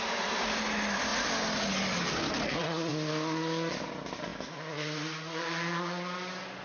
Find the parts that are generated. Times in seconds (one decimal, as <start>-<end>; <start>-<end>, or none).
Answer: none